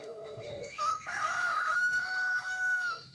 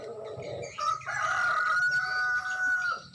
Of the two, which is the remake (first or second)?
first